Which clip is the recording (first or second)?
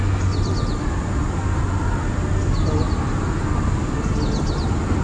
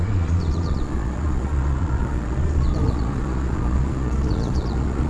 first